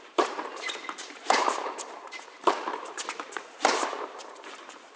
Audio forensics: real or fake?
fake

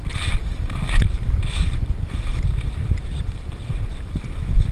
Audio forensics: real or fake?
real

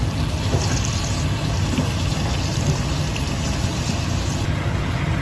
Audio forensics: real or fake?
real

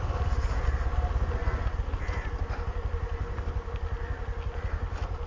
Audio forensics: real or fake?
real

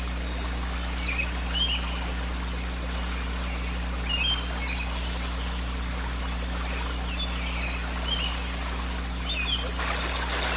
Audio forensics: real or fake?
real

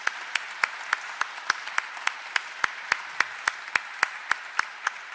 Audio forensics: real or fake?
real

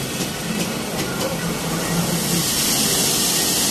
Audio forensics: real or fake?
real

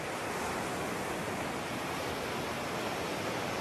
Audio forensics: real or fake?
real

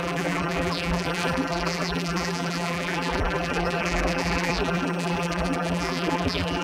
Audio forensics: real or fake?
fake